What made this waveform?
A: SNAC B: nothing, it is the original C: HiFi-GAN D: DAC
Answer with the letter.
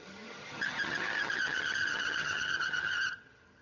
C